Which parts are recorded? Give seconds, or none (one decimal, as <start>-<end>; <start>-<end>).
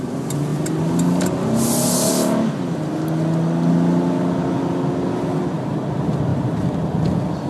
0.0-7.5